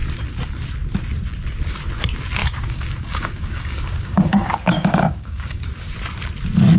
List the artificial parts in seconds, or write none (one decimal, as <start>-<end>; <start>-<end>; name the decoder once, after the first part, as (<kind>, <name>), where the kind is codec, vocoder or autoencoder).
2.4-5.6 (codec, DAC)